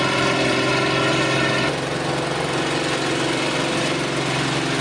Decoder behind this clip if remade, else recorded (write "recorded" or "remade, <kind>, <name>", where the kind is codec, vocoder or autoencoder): recorded